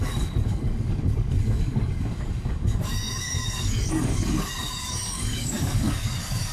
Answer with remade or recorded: remade